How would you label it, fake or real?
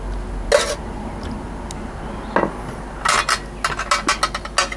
real